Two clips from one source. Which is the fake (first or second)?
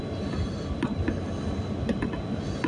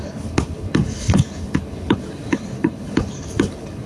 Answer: second